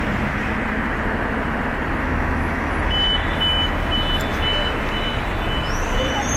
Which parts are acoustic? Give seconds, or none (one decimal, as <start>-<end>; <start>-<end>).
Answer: 0.0-2.0; 2.7-6.4